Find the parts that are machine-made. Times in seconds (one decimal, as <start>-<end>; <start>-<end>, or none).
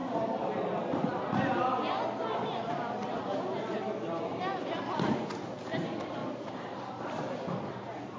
none